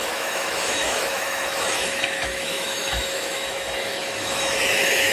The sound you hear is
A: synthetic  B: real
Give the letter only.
A